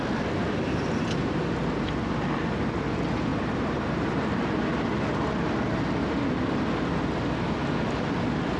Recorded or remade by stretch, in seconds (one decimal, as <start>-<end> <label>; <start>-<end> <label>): 0.0-3.3 recorded; 3.3-4.4 remade; 4.4-8.6 recorded